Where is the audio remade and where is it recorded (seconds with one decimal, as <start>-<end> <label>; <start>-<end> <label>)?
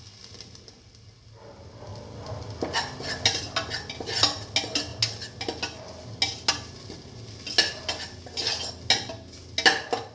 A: 0.0-10.1 recorded